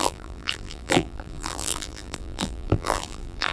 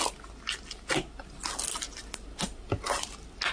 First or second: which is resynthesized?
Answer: first